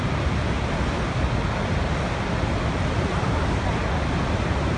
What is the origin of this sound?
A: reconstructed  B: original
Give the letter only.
B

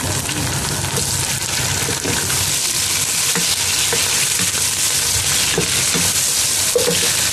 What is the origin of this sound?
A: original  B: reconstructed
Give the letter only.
A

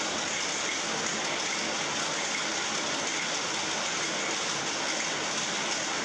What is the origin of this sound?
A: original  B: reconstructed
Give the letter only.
A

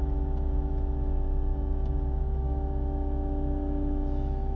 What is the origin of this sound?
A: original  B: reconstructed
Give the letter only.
B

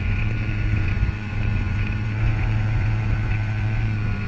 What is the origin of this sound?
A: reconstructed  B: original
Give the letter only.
A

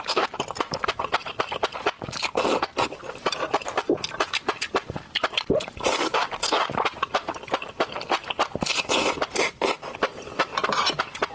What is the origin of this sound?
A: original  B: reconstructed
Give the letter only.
A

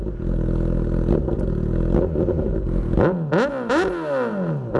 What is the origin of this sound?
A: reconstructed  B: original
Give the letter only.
B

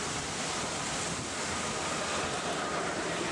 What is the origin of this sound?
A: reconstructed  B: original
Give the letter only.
B